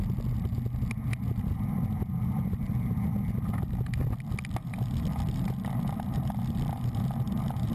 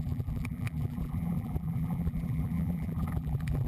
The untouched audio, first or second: first